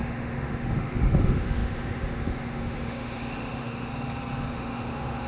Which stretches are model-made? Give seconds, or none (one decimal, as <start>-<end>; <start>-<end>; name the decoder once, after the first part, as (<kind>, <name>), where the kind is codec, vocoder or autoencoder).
0.0-3.9 (autoencoder, DAC-VAE); 4.5-5.3